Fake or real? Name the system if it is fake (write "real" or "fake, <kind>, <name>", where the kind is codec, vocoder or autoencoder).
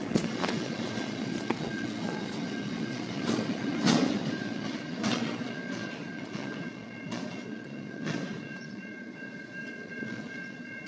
fake, vocoder, Vocos